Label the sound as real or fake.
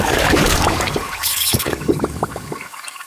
fake